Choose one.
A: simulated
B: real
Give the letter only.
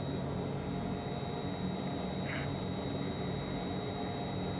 B